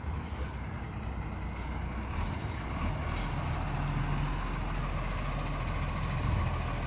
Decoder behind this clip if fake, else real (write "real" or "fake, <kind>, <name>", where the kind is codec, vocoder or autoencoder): real